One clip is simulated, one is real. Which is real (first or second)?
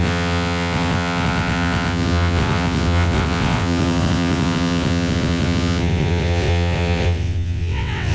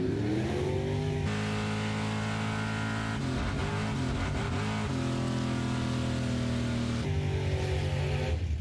second